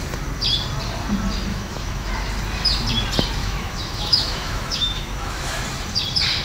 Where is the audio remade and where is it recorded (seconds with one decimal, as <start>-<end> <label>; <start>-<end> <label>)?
0.0-1.5 recorded; 1.5-2.1 remade; 2.1-3.4 recorded; 3.4-5.6 remade; 5.6-6.4 recorded